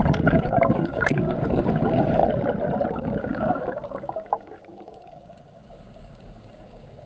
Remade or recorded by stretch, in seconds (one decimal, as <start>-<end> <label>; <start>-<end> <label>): 0.0-2.2 remade; 2.2-2.9 recorded; 2.9-7.1 remade